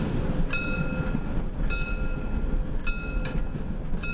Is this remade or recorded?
recorded